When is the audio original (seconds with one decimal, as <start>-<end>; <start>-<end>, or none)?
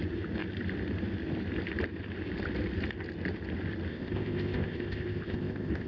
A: 0.0-3.9